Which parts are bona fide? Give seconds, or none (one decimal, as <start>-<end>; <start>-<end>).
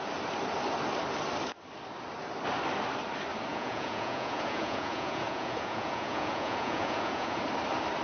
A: 0.0-3.5; 7.4-8.0